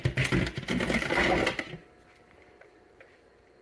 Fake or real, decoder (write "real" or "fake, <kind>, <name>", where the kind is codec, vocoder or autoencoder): real